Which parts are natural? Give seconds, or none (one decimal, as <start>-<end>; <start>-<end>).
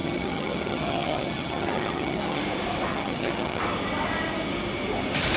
2.4-2.9; 3.6-5.4